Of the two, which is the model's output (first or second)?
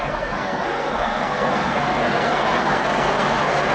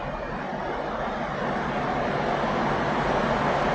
first